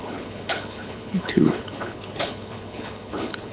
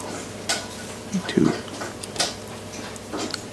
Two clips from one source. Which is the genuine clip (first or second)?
second